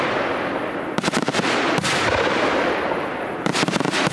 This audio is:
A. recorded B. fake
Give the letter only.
A